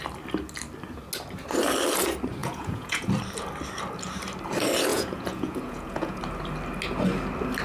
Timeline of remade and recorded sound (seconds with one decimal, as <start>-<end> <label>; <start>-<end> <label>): 0.0-2.4 recorded; 2.4-3.1 remade; 3.1-4.9 recorded; 4.9-6.2 remade; 6.2-7.6 recorded